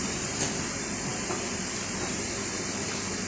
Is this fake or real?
real